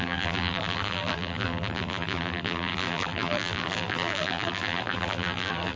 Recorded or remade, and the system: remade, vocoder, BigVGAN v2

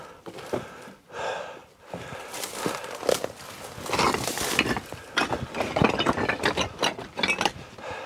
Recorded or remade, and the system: recorded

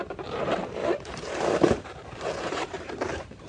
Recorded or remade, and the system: remade, vocoder, BigVGAN v2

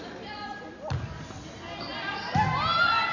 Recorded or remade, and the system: recorded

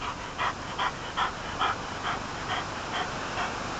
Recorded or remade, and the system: recorded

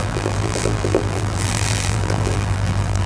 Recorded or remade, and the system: remade, vocoder, BigVGAN v2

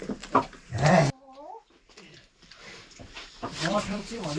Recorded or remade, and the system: remade, vocoder, BigVGAN v2